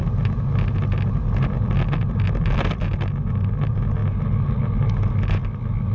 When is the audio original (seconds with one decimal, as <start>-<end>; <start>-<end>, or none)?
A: 0.0-5.9